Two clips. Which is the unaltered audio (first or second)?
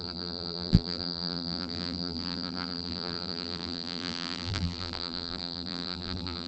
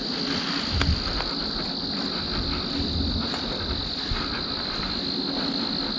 second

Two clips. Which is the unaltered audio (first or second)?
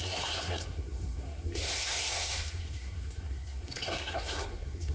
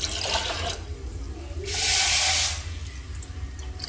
second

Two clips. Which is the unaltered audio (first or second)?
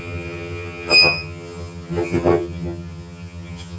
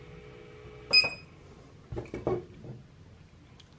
second